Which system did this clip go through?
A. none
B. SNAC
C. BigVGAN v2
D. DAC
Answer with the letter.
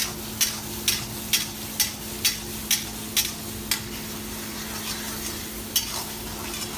A